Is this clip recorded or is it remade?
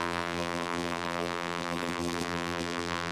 remade